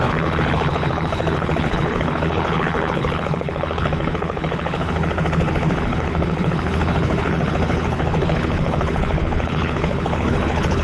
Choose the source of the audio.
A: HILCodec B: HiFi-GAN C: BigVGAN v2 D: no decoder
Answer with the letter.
A